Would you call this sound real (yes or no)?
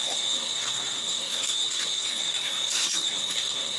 no